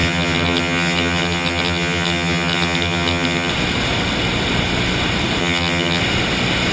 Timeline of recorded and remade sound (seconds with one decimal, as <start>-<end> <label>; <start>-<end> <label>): 0.0-3.5 remade; 3.5-5.4 recorded; 5.4-6.0 remade; 6.0-6.7 recorded